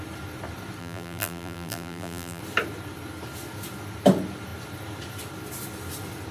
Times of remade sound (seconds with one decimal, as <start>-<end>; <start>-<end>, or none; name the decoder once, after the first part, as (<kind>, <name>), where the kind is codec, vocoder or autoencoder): 0.8-2.4 (vocoder, BigVGAN v2)